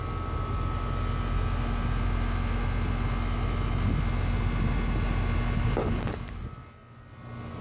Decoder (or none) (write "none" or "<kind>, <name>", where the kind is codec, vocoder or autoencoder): none